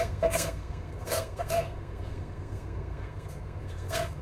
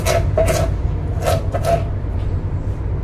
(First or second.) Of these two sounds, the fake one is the first